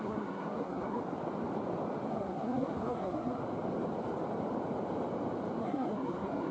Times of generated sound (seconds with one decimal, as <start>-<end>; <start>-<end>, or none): 0.0-1.0; 2.1-3.4; 5.6-6.5